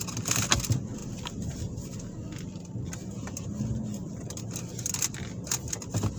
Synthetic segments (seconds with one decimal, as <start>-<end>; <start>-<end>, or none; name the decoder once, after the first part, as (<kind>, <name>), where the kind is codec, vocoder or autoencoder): 1.0-4.4 (vocoder, BigVGAN v2)